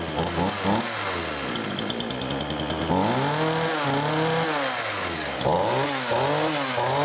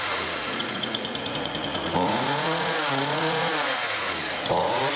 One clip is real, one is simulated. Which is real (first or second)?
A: first